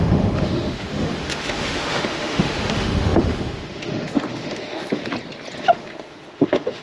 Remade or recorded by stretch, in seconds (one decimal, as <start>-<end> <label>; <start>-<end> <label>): 0.0-5.0 remade; 5.0-5.6 recorded; 5.6-6.8 remade